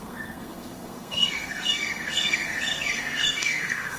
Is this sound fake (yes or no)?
yes